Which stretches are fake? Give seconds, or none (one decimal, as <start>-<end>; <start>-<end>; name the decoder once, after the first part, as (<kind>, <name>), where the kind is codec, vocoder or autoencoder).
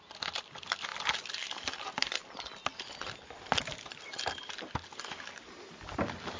none